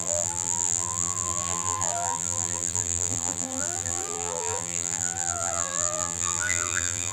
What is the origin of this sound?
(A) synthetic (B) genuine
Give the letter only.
A